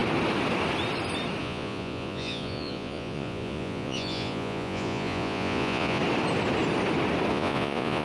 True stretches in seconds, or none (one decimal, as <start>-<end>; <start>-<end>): 0.0-1.4; 6.0-7.3